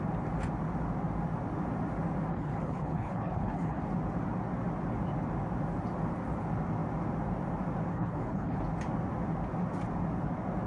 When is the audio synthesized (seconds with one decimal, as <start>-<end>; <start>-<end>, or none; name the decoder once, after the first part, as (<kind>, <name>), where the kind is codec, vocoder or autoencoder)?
2.3-3.8 (codec, HILCodec); 7.9-8.6